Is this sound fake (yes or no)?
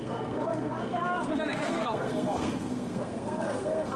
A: yes